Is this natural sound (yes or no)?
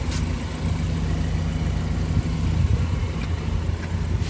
yes